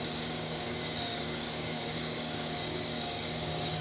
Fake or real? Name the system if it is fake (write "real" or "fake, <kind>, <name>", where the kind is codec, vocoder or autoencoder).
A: fake, codec, DAC